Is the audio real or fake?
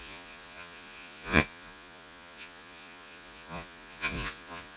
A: fake